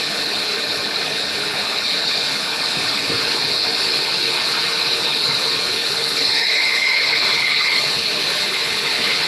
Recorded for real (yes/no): no